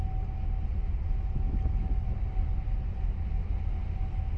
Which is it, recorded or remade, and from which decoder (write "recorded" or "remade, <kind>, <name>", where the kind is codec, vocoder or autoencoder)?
recorded